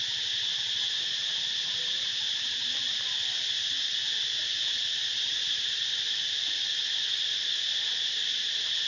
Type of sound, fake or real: fake